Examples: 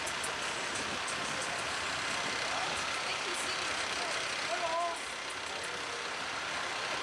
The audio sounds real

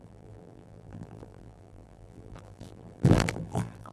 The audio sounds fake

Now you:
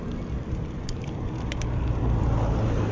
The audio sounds real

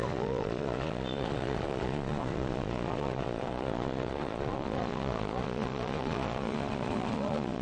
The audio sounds fake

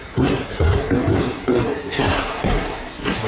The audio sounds fake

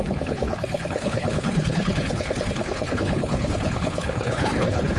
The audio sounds fake